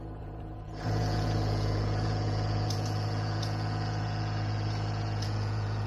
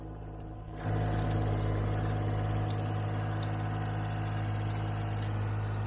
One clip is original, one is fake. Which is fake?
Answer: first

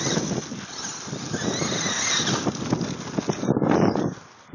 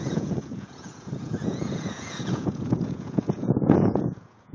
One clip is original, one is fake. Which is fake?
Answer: second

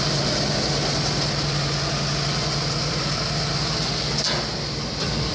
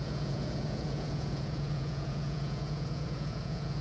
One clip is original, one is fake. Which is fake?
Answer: second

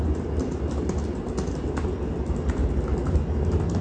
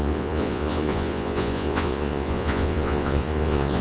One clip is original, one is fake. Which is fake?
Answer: second